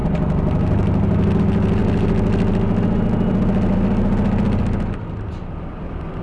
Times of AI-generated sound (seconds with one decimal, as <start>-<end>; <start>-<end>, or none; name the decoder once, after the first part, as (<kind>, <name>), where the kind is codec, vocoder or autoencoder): none